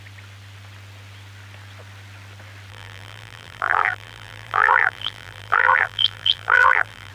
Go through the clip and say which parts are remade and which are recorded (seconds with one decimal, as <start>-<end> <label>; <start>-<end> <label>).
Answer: 0.0-2.7 recorded; 2.7-7.1 remade